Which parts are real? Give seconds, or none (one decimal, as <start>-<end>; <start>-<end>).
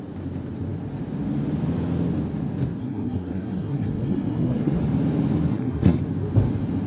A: 0.0-2.8; 4.8-5.5; 6.0-6.9